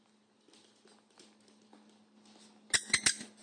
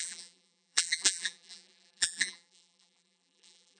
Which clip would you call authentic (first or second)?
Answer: first